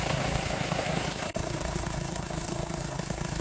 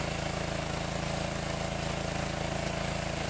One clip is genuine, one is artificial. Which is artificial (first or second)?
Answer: first